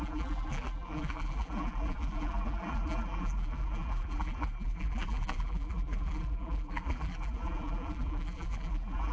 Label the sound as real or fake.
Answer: fake